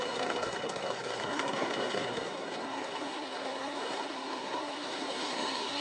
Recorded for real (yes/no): no